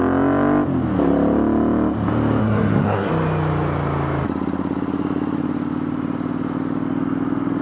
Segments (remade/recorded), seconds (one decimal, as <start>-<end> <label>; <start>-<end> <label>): 0.0-2.4 recorded; 2.4-3.1 remade; 3.1-7.6 recorded